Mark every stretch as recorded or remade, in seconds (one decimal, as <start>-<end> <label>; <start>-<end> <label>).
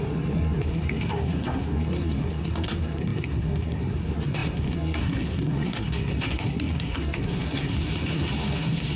0.0-9.0 remade